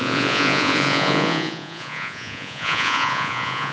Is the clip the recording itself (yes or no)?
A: no